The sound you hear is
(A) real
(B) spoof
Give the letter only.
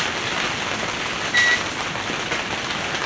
A